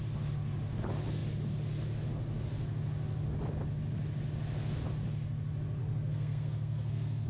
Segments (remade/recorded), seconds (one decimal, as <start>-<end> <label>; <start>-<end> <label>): 0.0-5.8 recorded; 5.8-7.3 remade